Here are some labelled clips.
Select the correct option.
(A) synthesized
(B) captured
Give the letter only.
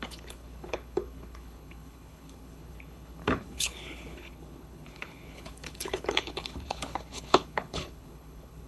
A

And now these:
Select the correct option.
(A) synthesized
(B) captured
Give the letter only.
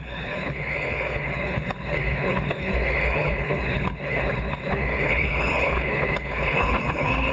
A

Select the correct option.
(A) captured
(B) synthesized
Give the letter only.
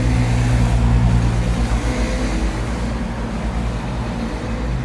A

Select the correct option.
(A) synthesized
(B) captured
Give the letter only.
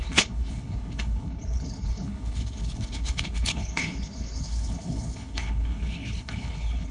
A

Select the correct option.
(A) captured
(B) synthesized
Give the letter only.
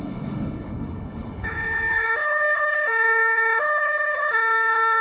B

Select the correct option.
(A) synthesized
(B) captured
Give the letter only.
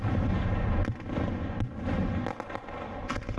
B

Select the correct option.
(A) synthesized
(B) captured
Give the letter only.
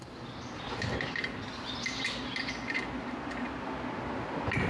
B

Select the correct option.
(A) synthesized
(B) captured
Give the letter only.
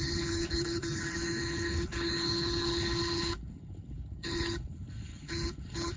A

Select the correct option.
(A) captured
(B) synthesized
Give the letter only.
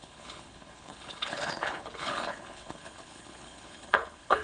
B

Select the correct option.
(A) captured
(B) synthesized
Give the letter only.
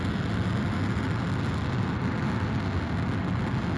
A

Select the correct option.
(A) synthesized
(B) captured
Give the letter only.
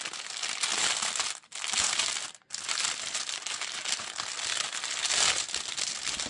B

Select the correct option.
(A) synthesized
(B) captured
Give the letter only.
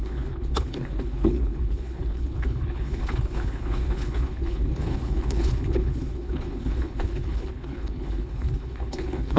A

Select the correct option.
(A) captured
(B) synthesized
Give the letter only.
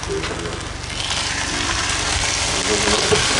A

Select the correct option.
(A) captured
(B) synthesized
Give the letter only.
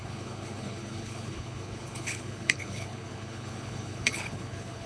B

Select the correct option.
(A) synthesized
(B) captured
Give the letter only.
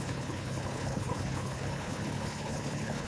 A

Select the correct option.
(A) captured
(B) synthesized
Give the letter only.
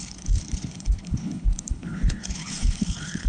B